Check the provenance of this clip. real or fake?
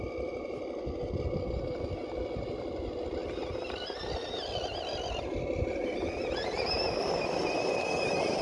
real